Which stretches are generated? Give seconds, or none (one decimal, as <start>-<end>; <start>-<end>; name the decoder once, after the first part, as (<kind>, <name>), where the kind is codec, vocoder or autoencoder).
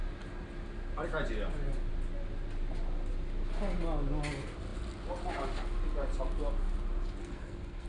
7.2-7.9 (codec, SNAC)